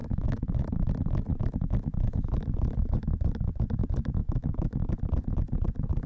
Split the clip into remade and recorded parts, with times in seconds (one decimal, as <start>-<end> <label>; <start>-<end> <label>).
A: 0.0-1.0 remade; 1.0-4.2 recorded; 4.2-4.9 remade; 4.9-6.1 recorded